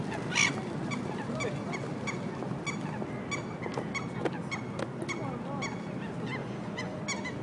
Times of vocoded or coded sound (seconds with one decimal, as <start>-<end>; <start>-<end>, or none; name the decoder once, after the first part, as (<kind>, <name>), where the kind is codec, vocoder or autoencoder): 6.4-7.0 (vocoder, Vocos)